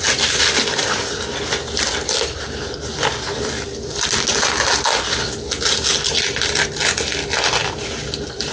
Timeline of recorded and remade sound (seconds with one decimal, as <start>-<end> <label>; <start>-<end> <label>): 0.0-8.5 recorded